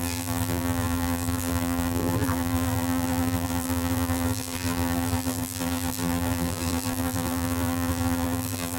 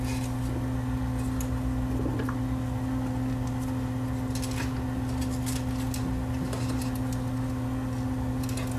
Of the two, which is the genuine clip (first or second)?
second